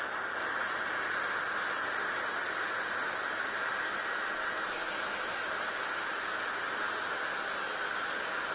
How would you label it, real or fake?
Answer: real